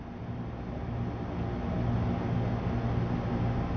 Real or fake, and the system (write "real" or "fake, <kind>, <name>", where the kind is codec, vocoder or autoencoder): real